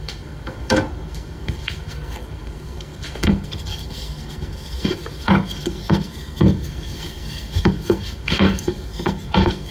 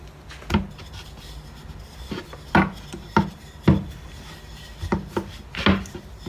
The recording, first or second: second